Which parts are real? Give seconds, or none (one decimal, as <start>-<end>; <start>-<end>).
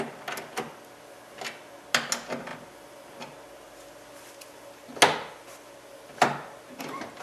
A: 0.0-7.2